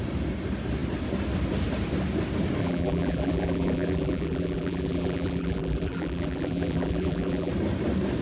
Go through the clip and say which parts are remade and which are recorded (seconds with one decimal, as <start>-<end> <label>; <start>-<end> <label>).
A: 0.0-2.6 recorded; 2.6-7.5 remade; 7.5-8.2 recorded